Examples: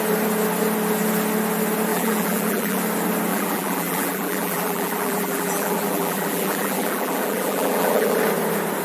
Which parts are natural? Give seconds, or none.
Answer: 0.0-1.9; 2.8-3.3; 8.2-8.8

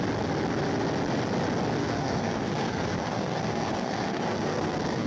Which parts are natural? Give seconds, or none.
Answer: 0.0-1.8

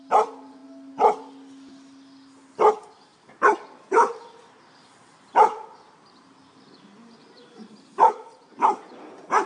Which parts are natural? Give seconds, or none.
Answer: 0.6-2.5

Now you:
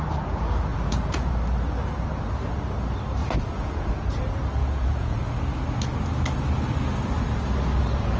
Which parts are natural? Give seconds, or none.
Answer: 0.0-0.7; 1.3-3.2; 3.9-4.6; 5.2-8.2

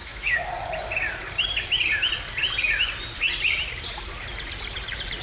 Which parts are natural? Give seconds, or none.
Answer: 0.5-5.2

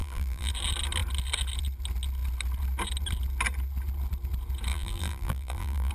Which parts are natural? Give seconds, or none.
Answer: 0.5-4.7